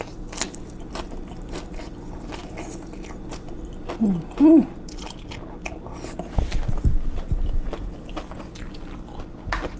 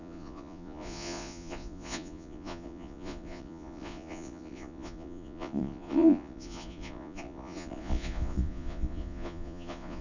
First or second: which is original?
first